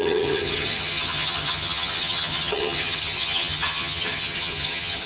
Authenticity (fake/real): fake